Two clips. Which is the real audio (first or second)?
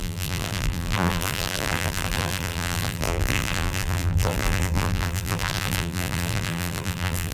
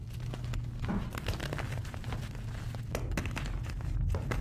second